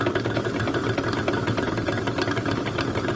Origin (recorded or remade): recorded